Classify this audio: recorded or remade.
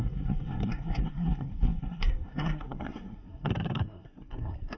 remade